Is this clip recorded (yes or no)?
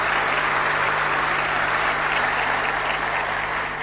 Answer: yes